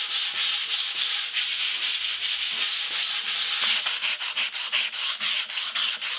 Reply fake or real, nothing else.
real